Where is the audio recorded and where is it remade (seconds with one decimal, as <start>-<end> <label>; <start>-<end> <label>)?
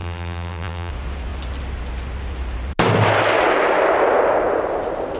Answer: 0.0-0.9 remade; 0.9-5.2 recorded